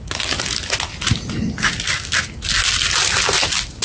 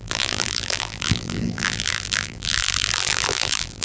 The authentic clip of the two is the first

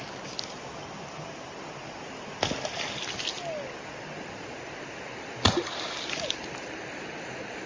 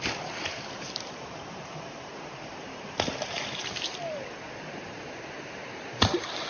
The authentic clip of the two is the first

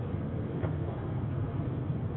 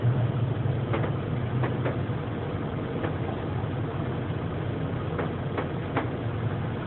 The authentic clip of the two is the second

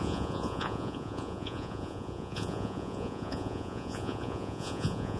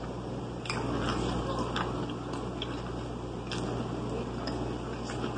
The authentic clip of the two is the second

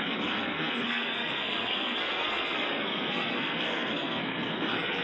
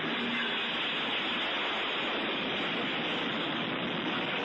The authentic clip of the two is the second